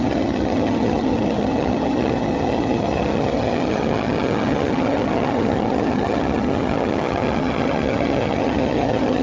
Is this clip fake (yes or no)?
yes